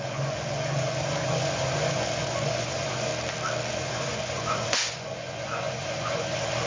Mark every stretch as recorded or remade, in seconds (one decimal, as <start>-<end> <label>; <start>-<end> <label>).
0.0-3.1 remade; 3.1-3.7 recorded; 3.7-6.7 remade